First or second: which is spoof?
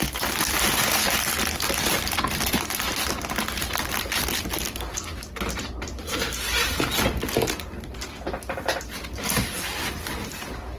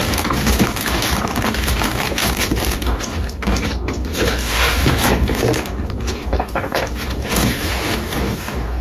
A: second